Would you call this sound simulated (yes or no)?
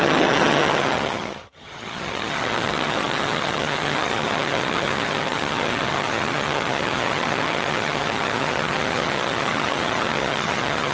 yes